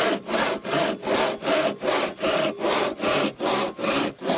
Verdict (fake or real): real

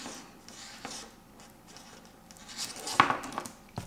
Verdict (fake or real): real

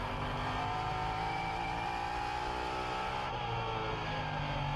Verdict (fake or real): real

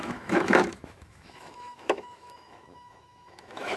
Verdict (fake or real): fake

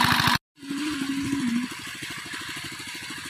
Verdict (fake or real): real